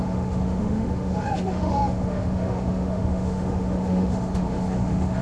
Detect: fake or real fake